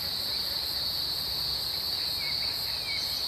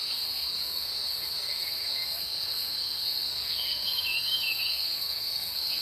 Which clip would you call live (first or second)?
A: first